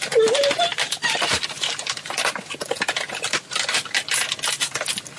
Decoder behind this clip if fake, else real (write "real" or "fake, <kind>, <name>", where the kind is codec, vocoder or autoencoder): real